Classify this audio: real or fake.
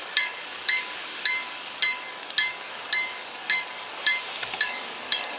fake